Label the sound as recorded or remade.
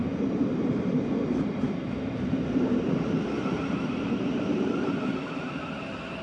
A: remade